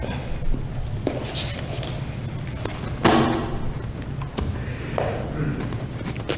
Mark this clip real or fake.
real